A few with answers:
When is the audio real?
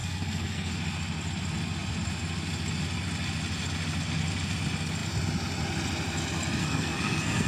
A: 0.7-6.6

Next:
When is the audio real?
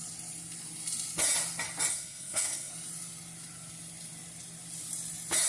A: 0.0-1.9; 2.7-5.5